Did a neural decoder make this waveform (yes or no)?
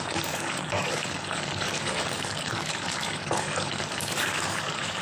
yes